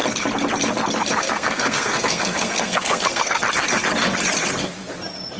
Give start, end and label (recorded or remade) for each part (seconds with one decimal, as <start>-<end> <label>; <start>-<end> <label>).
0.0-1.2 recorded; 1.2-3.4 remade; 3.4-5.4 recorded